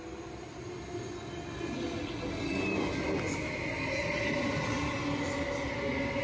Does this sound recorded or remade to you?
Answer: recorded